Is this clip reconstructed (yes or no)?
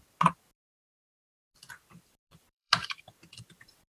yes